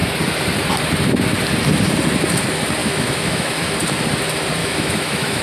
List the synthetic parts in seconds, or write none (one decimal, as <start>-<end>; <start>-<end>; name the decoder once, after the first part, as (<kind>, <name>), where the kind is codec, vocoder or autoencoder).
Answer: 2.8-3.7 (autoencoder, DAC-VAE); 4.6-5.4